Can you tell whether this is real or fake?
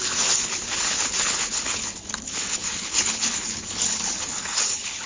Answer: fake